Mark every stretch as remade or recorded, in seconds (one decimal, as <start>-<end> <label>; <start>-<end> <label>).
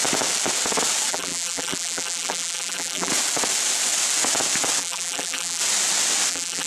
0.0-1.1 recorded; 1.1-3.1 remade; 3.1-4.8 recorded; 4.8-5.6 remade; 5.6-6.3 recorded; 6.3-6.7 remade